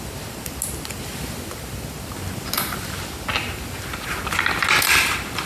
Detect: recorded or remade recorded